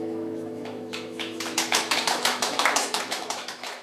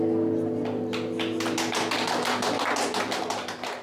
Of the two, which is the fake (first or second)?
first